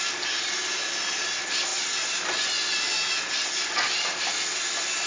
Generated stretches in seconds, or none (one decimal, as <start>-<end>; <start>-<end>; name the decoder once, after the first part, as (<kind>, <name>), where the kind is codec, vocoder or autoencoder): none